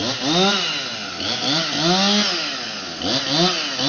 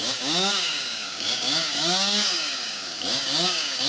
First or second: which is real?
first